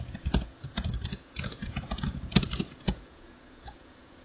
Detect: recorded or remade remade